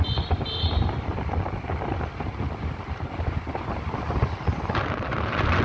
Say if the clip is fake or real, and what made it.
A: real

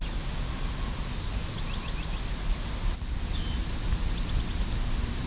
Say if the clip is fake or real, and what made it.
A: real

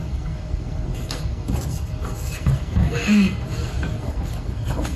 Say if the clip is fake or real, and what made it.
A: fake, codec, SNAC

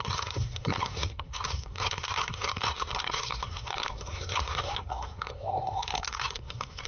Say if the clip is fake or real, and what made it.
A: fake, codec, SNAC